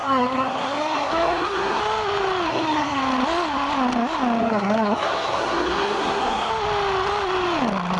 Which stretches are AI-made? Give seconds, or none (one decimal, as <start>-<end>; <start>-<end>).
0.0-1.8; 2.5-3.0; 4.4-6.5